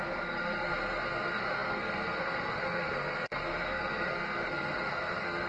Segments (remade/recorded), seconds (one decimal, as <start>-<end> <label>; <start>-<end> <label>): 0.0-5.5 remade